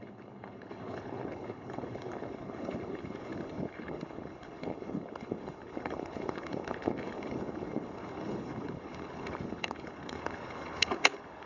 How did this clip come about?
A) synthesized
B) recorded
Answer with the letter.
A